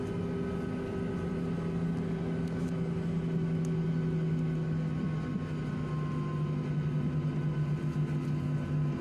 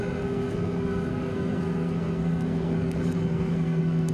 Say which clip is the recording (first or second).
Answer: first